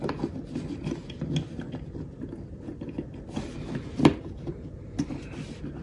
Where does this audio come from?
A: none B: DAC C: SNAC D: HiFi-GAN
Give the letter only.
A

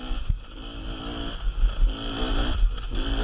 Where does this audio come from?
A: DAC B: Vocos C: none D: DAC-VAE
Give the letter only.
C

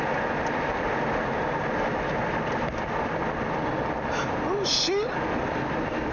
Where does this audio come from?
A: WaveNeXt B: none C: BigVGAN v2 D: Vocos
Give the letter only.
B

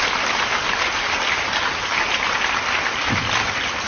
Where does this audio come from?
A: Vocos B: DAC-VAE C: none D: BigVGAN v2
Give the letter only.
C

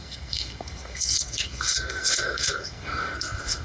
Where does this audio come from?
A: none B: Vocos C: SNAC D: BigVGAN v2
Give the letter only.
C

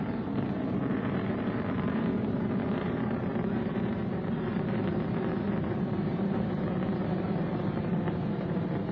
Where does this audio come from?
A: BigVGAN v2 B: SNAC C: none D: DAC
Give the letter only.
A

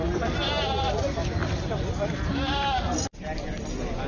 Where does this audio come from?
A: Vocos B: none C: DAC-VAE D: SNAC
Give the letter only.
B